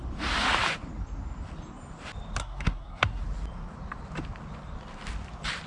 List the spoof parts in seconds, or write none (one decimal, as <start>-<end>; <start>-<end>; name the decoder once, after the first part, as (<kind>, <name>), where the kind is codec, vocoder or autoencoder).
2.4-3.2 (codec, SNAC)